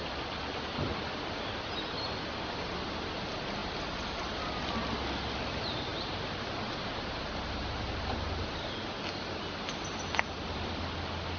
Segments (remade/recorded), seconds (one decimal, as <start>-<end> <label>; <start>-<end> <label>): 0.0-11.4 recorded